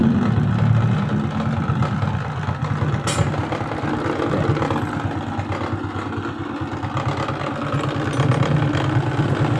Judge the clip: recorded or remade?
recorded